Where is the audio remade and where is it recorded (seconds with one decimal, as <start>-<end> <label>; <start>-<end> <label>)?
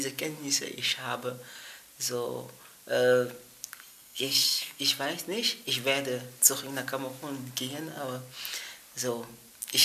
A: 0.0-3.9 recorded; 3.9-4.8 remade; 4.8-9.8 recorded